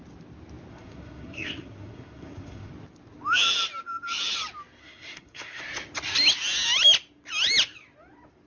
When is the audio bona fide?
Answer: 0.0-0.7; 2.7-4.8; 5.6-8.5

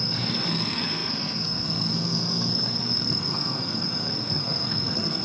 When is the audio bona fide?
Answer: none

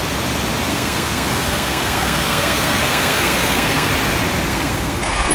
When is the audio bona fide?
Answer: 0.0-0.7; 3.9-4.5

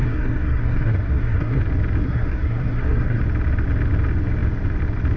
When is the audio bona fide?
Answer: 1.6-2.0; 3.2-5.2